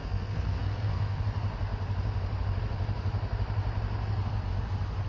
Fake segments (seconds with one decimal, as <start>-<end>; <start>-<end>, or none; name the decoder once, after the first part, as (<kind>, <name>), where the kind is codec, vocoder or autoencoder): 0.0-1.2 (codec, SNAC)